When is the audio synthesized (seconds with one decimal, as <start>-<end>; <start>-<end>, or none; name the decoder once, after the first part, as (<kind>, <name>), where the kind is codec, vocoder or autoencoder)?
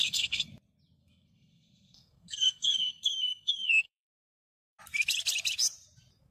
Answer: 0.0-0.5 (codec, SNAC); 1.0-4.8